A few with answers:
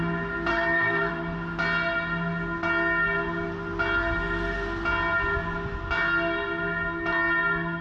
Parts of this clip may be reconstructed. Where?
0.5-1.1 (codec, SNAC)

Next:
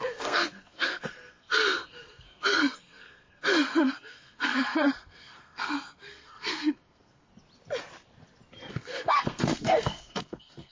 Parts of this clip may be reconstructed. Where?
0.0-7.3 (codec, SNAC); 8.7-10.7

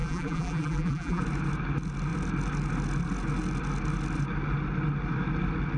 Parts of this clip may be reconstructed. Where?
0.0-1.2 (vocoder, BigVGAN v2)

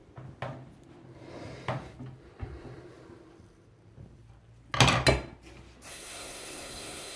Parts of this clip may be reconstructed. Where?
5.9-7.2 (codec, SNAC)